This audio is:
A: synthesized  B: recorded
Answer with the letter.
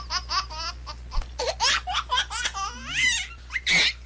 B